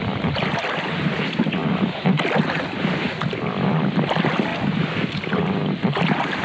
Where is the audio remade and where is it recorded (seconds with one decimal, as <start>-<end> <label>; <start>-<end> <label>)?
0.0-6.4 recorded